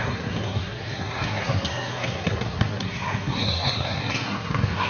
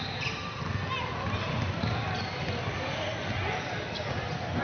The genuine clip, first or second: second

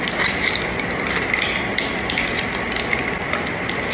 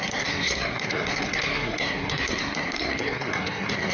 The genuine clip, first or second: first